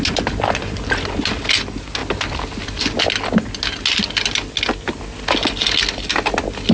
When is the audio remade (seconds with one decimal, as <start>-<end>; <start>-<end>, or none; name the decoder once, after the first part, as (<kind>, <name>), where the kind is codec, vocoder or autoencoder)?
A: none